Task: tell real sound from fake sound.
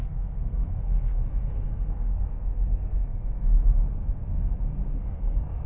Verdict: fake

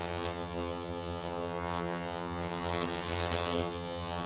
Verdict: fake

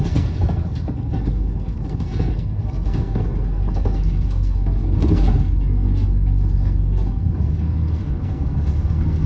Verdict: fake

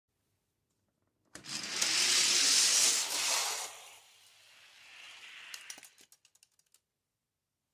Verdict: real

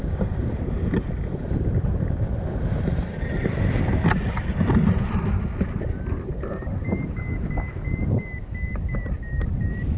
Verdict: real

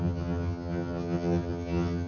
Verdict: fake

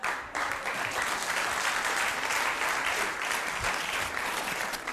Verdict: fake